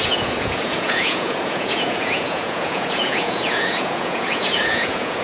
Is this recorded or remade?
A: remade